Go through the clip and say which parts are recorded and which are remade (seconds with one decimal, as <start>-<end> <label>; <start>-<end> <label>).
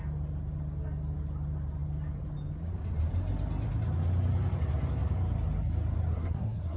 0.0-6.1 recorded; 6.1-6.8 remade